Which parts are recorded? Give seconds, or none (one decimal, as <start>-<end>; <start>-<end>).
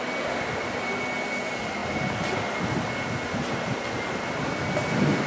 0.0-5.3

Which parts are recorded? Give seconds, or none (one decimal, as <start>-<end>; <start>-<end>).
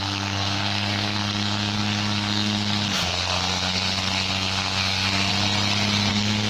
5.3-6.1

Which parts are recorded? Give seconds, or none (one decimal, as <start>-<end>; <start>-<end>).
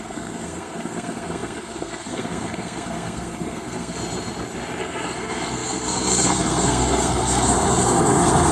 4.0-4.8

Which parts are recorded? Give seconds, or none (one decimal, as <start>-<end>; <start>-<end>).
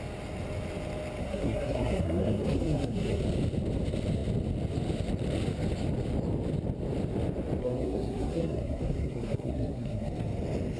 0.0-1.2; 3.2-7.6; 10.1-10.8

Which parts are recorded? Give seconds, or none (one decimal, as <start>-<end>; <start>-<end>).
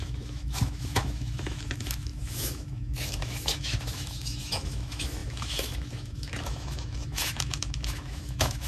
none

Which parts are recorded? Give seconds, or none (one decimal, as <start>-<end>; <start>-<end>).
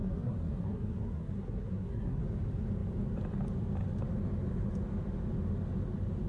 2.2-6.3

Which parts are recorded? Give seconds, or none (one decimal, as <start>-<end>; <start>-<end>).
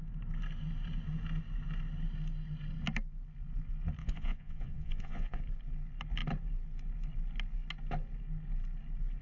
0.0-4.0; 5.4-9.2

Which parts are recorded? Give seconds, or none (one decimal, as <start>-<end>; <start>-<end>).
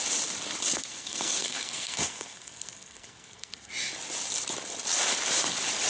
0.0-0.7; 3.7-5.9